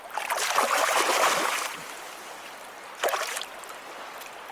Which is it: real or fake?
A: real